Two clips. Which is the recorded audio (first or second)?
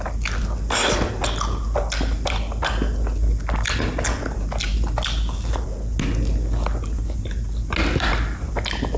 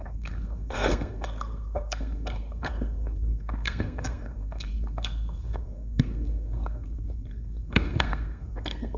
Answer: first